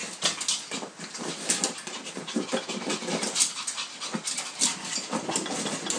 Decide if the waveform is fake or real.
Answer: real